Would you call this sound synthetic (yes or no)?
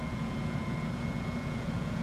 yes